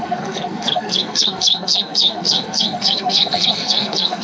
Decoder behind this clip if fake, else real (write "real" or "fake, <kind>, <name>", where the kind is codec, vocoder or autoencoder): fake, codec, SNAC